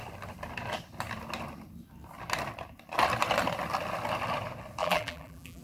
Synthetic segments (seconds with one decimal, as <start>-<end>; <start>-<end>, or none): 4.8-5.6